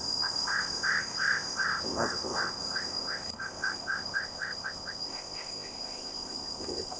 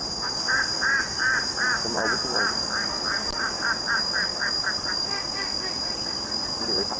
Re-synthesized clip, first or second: first